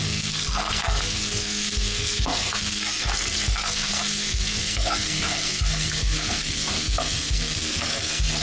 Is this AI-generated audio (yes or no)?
yes